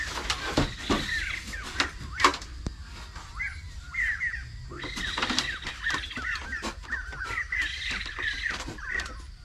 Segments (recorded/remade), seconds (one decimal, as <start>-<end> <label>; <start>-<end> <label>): 0.0-9.4 recorded